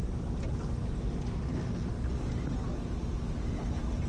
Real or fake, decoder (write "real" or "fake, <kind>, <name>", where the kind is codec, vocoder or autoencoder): real